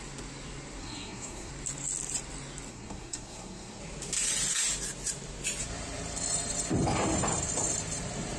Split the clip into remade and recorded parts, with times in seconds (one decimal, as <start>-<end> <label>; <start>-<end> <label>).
0.0-0.8 recorded; 0.8-1.5 remade; 1.5-2.7 recorded; 2.7-3.8 remade; 3.8-8.4 recorded